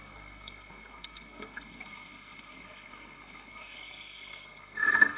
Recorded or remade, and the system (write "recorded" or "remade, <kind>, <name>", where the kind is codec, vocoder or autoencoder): remade, codec, SNAC